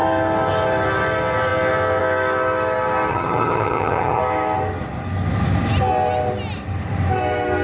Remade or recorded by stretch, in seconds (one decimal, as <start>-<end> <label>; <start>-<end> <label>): 0.0-3.1 recorded; 3.1-4.2 remade; 4.2-7.6 recorded

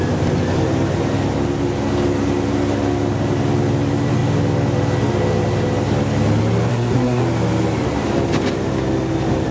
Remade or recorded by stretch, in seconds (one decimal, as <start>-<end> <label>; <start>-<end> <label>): 0.0-6.7 recorded; 6.7-7.2 remade; 7.2-9.5 recorded

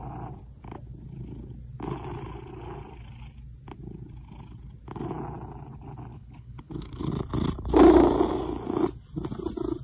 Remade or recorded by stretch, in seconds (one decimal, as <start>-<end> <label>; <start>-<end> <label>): 0.0-6.1 recorded; 6.1-7.1 remade; 7.1-9.8 recorded

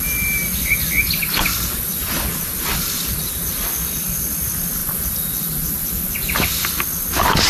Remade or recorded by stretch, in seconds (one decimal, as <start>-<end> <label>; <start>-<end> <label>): 0.0-7.5 recorded

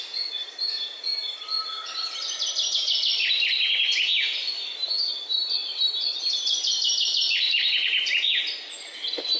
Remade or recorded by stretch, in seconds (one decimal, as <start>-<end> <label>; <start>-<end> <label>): 0.0-5.6 recorded; 5.6-8.4 remade; 8.4-9.4 recorded

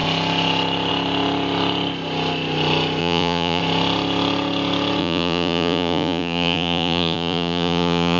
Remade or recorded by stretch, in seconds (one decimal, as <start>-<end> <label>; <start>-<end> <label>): 0.0-3.0 recorded; 3.0-3.6 remade; 3.6-5.0 recorded; 5.0-8.2 remade

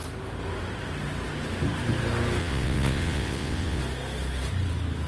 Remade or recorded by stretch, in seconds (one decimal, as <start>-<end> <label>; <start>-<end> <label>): 0.0-2.4 recorded; 2.4-3.8 remade; 3.8-5.1 recorded